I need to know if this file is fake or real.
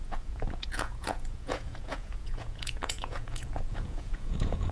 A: fake